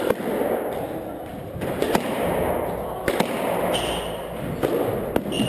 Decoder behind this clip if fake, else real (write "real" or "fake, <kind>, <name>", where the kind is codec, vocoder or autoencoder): real